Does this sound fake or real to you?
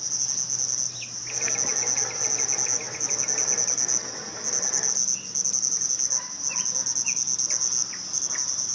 real